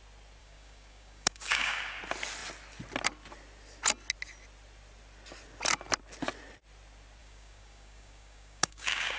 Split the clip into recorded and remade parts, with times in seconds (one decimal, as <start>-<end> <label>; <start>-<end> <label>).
0.0-0.4 recorded; 0.4-2.0 remade; 2.0-7.2 recorded; 7.2-9.2 remade